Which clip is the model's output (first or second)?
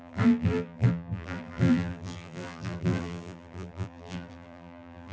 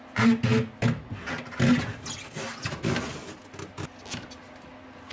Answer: first